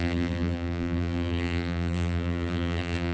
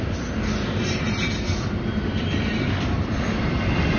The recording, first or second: second